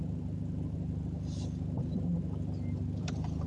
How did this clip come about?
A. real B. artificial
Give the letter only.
A